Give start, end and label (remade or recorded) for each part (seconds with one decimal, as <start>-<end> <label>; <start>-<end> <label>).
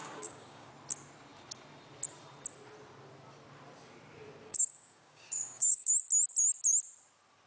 0.0-0.7 remade; 0.7-4.5 recorded; 4.5-5.9 remade; 5.9-7.5 recorded